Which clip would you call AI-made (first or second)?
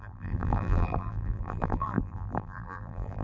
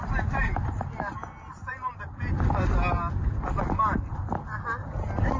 first